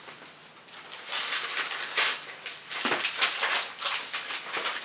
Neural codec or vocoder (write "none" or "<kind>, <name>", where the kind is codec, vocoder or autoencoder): none